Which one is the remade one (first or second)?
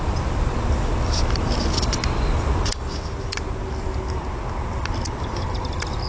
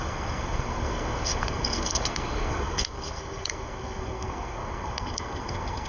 second